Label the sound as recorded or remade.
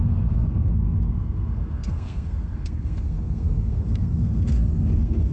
remade